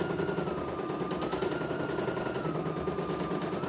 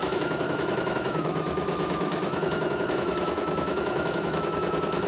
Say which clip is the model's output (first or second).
second